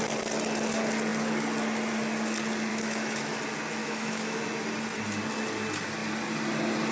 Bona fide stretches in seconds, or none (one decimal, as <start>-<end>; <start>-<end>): 0.0-2.7; 3.4-3.8; 4.4-6.9